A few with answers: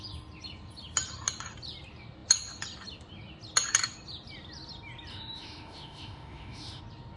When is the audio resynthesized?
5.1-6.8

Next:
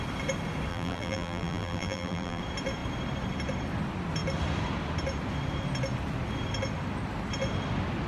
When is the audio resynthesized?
0.7-2.4

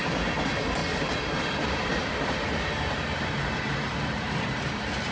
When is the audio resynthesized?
none

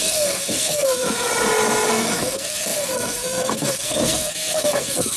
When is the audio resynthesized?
0.0-1.3; 1.9-5.2

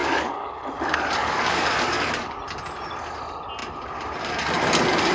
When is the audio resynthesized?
0.0-0.6; 1.2-2.4

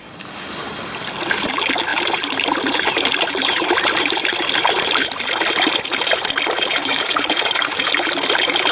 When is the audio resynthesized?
6.7-7.8

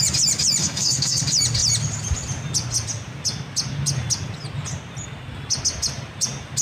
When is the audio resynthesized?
0.6-1.2